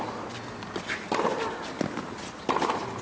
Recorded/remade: recorded